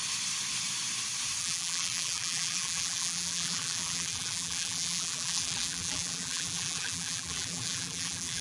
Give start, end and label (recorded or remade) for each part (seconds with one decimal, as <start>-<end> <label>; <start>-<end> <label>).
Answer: 0.0-1.4 recorded; 1.4-8.4 remade